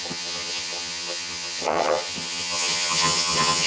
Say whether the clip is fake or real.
fake